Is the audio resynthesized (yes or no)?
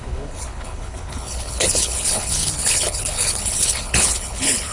yes